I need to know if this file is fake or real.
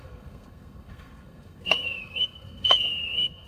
fake